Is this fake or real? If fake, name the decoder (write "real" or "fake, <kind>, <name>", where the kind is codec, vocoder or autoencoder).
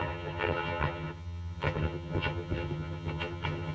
fake, vocoder, HiFi-GAN